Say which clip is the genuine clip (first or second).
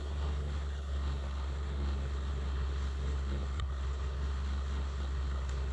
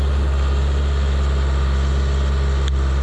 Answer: second